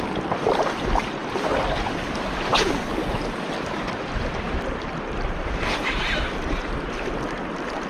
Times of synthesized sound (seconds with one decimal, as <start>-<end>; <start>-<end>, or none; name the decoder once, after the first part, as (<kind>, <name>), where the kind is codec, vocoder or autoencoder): 3.0-3.5 (vocoder, BigVGAN v2)